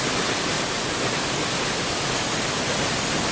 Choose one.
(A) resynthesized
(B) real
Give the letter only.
B